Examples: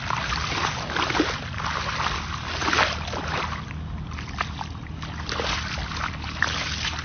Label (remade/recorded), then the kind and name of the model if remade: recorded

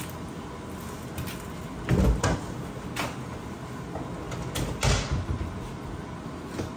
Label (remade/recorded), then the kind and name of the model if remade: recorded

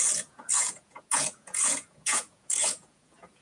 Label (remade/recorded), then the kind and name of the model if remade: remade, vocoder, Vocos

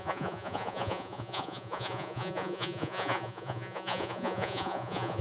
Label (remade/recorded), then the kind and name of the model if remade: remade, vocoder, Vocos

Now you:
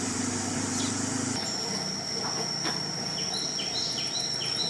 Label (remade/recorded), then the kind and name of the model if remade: recorded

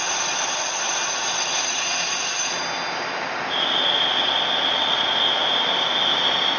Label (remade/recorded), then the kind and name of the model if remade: recorded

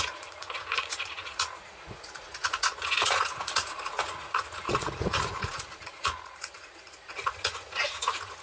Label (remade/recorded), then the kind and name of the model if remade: remade, vocoder, Vocos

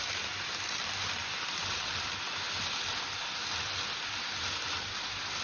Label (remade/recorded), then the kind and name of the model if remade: recorded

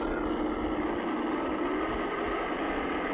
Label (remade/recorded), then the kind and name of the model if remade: recorded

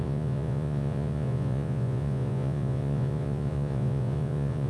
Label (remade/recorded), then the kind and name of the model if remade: remade, vocoder, Vocos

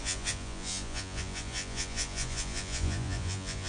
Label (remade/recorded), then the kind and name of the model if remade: remade, vocoder, Vocos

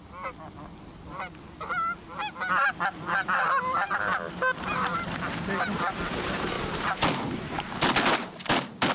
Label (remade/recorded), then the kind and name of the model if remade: recorded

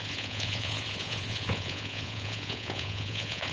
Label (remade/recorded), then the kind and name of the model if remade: remade, vocoder, Vocos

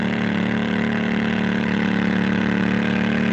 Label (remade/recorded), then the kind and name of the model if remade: remade, vocoder, Vocos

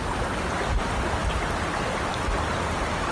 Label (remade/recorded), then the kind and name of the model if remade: recorded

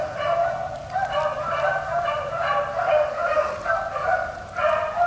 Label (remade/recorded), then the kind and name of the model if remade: recorded